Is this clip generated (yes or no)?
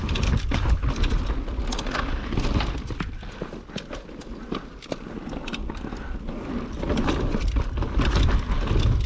no